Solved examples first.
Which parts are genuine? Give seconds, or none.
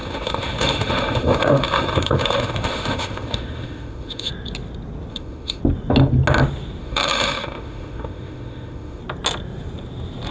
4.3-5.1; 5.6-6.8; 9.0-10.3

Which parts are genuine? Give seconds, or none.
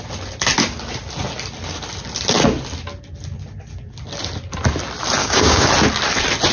0.0-5.2; 5.7-6.5